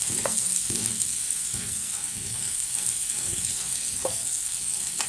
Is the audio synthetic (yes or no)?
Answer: yes